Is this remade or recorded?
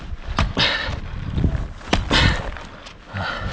recorded